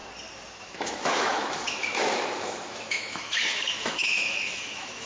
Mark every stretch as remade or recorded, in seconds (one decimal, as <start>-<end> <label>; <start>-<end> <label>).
0.0-0.6 recorded; 0.6-5.1 remade